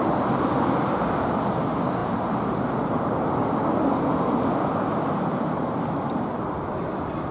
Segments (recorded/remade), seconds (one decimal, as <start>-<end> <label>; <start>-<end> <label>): 0.0-7.3 recorded